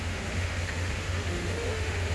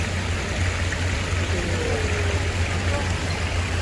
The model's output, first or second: first